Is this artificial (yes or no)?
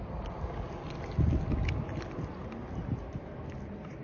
no